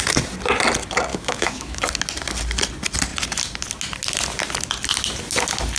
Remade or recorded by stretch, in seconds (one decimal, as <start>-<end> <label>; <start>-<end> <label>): 0.0-1.1 recorded; 1.1-1.8 remade; 1.8-5.8 recorded